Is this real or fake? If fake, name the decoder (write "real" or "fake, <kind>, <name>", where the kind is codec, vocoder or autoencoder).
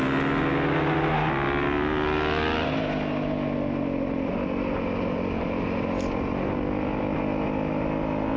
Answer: real